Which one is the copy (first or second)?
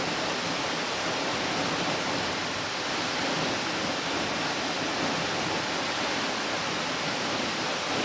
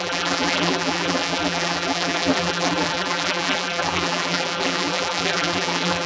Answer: second